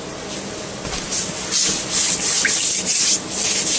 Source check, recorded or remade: recorded